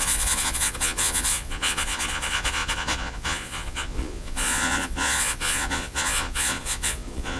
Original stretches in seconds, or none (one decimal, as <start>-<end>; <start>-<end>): none